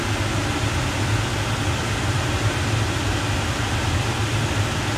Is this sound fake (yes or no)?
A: no